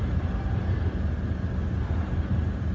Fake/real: real